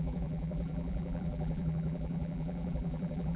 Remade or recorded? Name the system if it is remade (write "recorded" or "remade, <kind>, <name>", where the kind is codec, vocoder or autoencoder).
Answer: remade, vocoder, BigVGAN v2